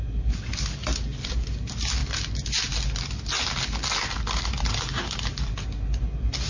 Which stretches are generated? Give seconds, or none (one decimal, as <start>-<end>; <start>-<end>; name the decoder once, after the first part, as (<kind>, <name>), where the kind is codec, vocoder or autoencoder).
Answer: none